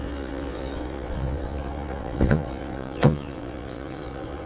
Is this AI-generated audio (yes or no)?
yes